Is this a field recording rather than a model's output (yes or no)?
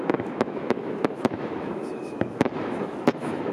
no